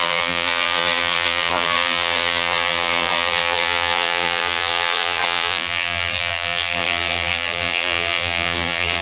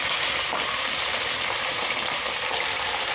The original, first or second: second